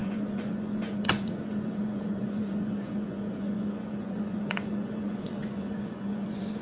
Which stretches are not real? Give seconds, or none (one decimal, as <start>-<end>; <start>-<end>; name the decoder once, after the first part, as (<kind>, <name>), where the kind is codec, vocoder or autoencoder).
0.0-6.6 (vocoder, Vocos)